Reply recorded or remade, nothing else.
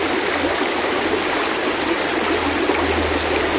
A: recorded